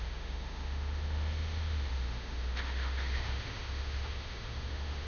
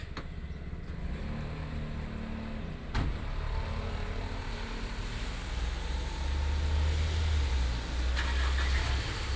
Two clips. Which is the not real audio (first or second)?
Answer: first